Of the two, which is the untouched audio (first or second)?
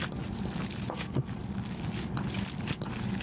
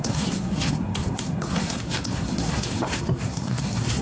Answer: first